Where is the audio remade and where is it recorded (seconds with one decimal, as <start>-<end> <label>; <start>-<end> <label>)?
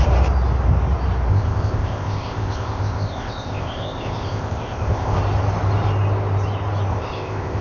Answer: 0.0-1.3 recorded; 1.3-5.2 remade; 5.2-6.9 recorded; 6.9-7.6 remade